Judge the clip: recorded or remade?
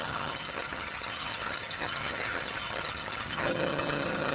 remade